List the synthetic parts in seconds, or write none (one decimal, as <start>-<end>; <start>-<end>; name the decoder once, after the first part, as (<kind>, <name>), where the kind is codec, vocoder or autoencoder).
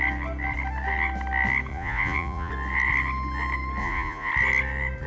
1.7-2.5 (vocoder, Vocos); 3.8-4.3